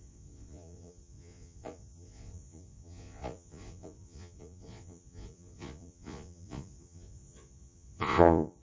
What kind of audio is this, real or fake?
fake